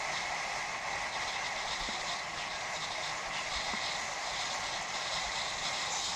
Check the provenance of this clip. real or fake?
real